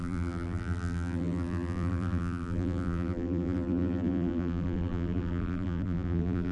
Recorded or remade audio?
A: remade